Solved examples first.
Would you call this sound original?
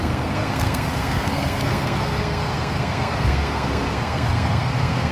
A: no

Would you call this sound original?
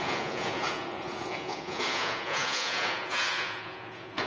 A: no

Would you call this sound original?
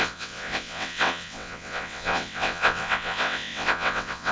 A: no